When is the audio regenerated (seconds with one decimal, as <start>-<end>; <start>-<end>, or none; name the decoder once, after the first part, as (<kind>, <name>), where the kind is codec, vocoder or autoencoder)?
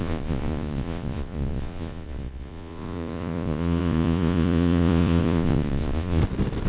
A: 0.0-6.2 (vocoder, Vocos)